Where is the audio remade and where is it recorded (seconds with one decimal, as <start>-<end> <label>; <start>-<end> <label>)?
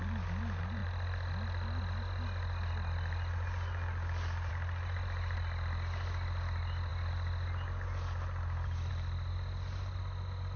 0.0-10.6 recorded